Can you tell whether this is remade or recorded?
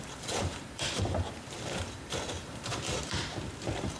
remade